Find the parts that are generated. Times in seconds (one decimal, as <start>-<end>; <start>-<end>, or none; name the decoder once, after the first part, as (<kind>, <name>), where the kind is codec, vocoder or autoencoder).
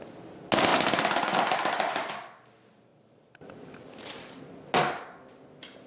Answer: 0.7-1.9 (vocoder, BigVGAN v2); 2.9-4.4